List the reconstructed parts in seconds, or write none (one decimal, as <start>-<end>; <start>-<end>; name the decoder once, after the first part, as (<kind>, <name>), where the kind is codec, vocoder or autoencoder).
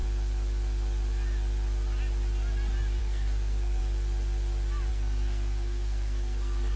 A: 3.0-3.8 (codec, SNAC); 4.9-6.8